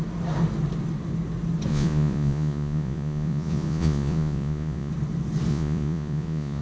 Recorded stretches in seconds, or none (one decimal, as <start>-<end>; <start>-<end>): 0.0-1.7; 4.9-5.5